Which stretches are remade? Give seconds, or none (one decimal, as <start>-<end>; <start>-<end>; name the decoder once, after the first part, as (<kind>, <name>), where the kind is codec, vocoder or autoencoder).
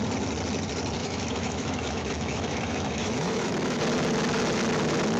1.0-3.8 (autoencoder, DAC-VAE)